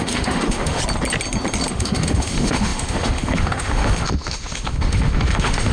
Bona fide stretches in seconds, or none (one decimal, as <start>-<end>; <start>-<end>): 0.8-1.7